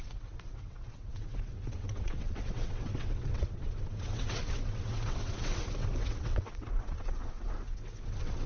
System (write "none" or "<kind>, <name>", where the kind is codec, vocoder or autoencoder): vocoder, WaveNeXt